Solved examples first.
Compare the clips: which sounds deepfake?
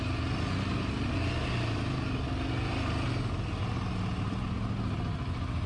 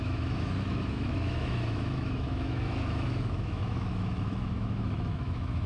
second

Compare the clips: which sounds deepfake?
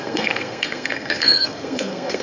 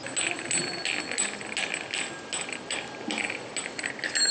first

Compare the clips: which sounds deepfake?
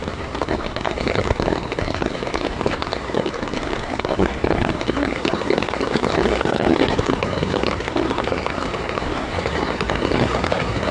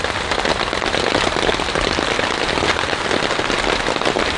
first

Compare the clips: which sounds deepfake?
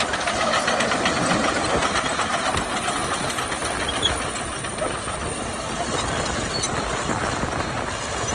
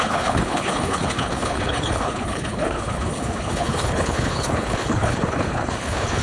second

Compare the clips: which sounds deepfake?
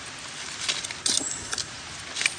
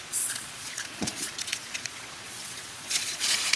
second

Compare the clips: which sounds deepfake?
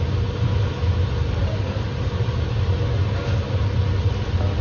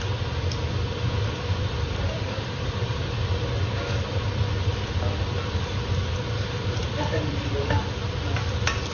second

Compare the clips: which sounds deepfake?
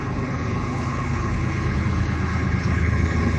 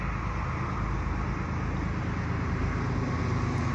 first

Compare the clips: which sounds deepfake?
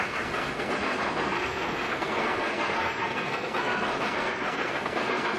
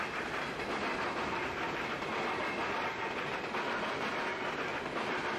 first